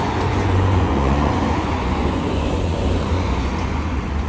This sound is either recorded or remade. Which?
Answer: remade